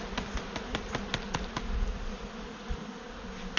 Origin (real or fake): real